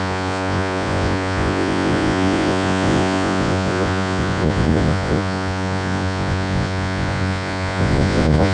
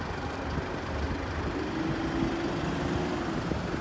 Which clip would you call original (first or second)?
second